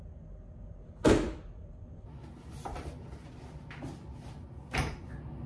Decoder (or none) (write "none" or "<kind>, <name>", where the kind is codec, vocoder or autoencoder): none